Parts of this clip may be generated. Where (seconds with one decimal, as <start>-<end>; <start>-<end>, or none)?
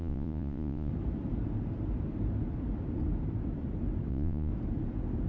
0.0-0.9; 4.1-4.5